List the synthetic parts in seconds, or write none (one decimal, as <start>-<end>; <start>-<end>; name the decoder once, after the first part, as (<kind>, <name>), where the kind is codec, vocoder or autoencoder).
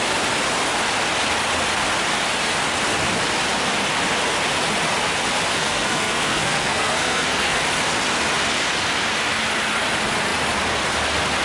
5.5-7.6 (codec, SNAC)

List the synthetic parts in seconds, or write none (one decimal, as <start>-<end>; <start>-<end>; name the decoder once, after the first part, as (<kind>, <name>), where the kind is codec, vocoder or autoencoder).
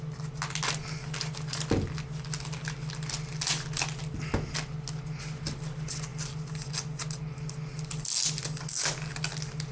none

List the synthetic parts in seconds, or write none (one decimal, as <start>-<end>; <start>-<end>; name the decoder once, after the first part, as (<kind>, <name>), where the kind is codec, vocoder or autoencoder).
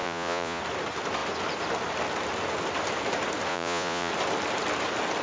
0.0-0.6 (vocoder, Vocos); 3.5-4.1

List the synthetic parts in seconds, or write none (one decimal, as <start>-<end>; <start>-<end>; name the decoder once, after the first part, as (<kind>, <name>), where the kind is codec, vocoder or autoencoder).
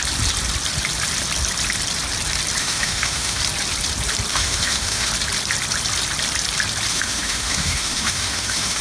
2.6-3.4 (autoencoder, DAC-VAE); 4.3-5.1; 6.9-8.8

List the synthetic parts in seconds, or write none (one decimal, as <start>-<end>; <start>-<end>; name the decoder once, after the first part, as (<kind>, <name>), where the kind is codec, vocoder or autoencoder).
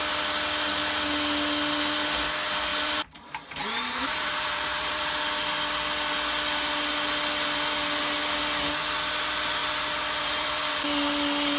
2.7-5.1 (vocoder, BigVGAN v2); 9.6-10.8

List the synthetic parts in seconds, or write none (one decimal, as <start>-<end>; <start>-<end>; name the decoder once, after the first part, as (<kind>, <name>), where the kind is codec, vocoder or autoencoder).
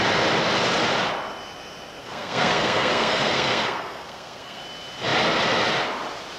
2.0-4.6 (codec, SNAC)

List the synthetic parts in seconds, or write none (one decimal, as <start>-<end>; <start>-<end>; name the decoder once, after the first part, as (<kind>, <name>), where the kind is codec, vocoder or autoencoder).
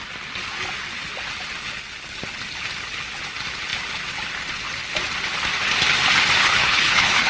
6.4-7.3 (codec, HILCodec)